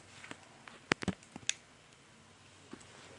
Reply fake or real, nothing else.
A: real